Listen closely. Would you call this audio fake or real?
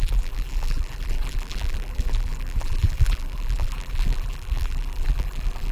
fake